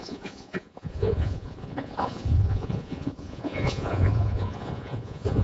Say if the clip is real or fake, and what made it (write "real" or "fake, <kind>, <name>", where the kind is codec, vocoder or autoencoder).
fake, vocoder, Vocos